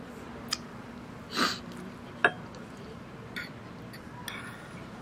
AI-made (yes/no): no